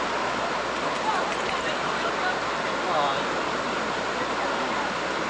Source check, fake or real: real